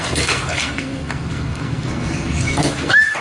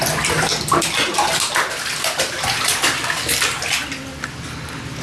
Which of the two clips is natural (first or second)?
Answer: second